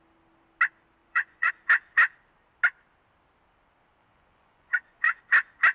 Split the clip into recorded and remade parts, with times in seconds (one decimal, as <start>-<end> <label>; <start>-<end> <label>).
0.0-1.0 recorded; 1.0-1.5 remade; 1.5-4.0 recorded; 4.0-5.2 remade; 5.2-5.7 recorded